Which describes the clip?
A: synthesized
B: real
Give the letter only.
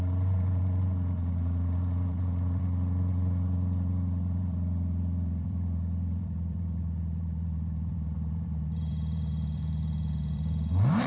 A